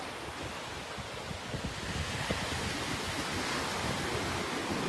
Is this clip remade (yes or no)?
no